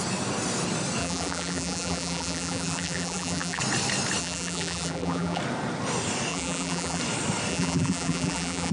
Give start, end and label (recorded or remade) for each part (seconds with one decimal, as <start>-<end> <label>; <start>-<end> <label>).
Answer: 0.0-1.0 recorded; 1.0-3.6 remade; 3.6-4.2 recorded; 4.2-5.4 remade; 5.4-6.3 recorded; 6.3-7.0 remade; 7.0-7.5 recorded; 7.5-8.7 remade